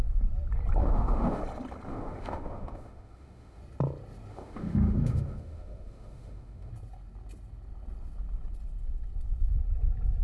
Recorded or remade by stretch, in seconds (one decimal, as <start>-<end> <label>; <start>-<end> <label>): 0.0-0.8 recorded; 0.8-1.4 remade; 1.4-1.9 recorded; 1.9-3.6 remade; 3.6-4.3 recorded; 4.3-6.7 remade; 6.7-10.2 recorded